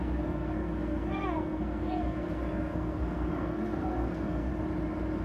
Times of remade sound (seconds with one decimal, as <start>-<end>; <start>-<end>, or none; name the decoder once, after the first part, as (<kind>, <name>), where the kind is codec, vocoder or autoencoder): 0.0-4.5 (codec, SNAC)

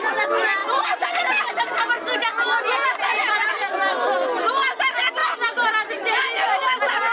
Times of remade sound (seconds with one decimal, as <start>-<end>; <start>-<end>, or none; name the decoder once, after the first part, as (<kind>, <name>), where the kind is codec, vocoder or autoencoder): none

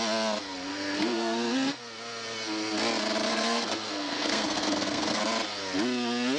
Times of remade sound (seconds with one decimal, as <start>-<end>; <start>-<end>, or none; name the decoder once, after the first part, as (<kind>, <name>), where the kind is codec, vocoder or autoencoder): 0.7-1.8 (codec, SNAC); 3.3-5.2